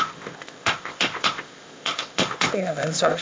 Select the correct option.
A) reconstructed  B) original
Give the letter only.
A